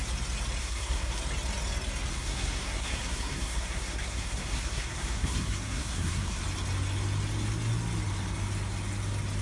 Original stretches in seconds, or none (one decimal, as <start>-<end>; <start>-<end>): 0.0-0.6; 1.2-2.1; 6.4-9.4